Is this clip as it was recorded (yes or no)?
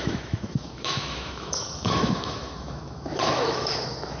no